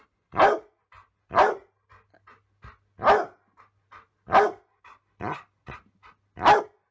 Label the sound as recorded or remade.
recorded